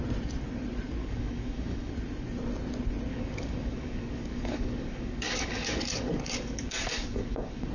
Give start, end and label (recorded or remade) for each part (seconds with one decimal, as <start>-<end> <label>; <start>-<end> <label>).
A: 0.0-1.0 recorded; 1.0-1.9 remade; 1.9-3.1 recorded; 3.1-7.7 remade